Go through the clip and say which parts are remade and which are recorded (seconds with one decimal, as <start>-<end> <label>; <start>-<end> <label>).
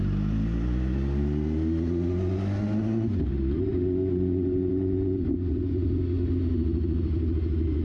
0.0-7.8 recorded